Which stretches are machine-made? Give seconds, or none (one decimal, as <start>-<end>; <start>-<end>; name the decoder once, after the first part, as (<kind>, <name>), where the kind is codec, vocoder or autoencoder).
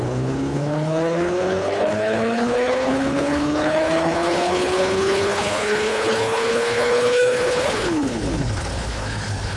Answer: 0.0-9.6 (codec, HILCodec)